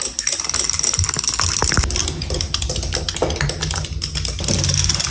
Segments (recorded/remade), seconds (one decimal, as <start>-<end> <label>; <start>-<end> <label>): 0.0-5.1 recorded